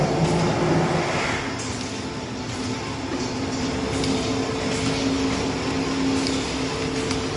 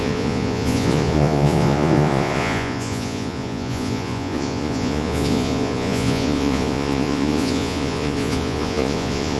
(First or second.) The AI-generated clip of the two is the second